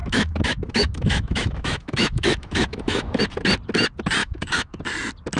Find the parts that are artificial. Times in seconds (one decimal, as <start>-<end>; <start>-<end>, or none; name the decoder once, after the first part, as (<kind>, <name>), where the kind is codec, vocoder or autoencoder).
0.0-3.2 (autoencoder, DAC-VAE); 4.2-4.8